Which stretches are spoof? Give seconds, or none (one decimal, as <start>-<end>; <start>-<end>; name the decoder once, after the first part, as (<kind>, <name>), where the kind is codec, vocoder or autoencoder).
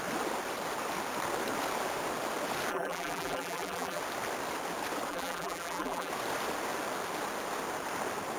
2.7-4.0 (vocoder, BigVGAN v2); 5.1-6.1